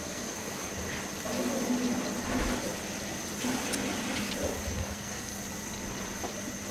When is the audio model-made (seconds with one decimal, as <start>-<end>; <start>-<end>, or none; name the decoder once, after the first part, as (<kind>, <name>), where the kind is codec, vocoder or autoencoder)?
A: 0.0-0.7 (codec, SNAC); 4.7-5.3